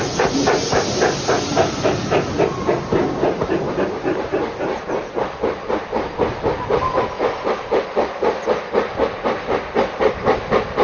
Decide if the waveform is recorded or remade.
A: recorded